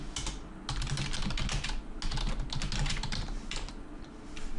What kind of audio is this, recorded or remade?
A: recorded